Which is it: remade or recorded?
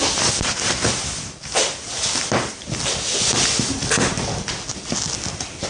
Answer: recorded